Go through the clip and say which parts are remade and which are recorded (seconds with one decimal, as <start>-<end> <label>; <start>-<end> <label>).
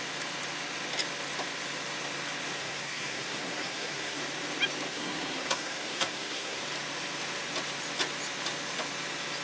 0.0-2.6 recorded; 2.6-4.2 remade; 4.2-4.9 recorded; 4.9-6.6 remade; 6.6-9.4 recorded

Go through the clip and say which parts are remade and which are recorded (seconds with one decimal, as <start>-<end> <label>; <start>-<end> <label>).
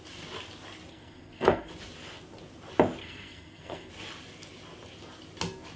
0.0-0.9 recorded; 0.9-1.7 remade; 1.7-3.0 recorded; 3.0-3.9 remade; 3.9-5.8 recorded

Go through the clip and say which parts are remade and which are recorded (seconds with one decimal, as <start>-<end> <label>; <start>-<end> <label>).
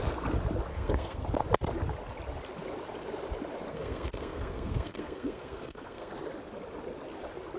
0.0-0.7 recorded; 0.7-1.2 remade; 1.2-3.7 recorded; 3.7-6.1 remade; 6.1-7.6 recorded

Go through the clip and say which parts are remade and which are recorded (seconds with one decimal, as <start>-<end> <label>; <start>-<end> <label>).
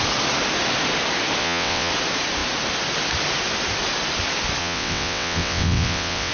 0.0-1.4 recorded; 1.4-1.9 remade; 1.9-4.6 recorded; 4.6-6.3 remade